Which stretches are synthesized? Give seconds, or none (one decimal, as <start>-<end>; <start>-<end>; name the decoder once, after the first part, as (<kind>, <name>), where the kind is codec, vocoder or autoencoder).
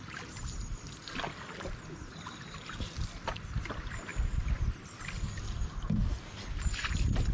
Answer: none